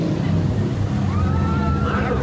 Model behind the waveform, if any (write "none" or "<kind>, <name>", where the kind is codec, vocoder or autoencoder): none